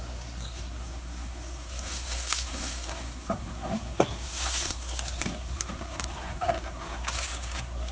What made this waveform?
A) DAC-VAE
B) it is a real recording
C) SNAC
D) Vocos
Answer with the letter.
C